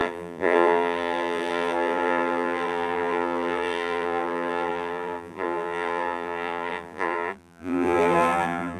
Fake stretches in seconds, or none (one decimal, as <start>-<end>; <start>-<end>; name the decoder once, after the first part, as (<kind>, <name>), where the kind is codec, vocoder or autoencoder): 0.0-8.8 (vocoder, BigVGAN v2)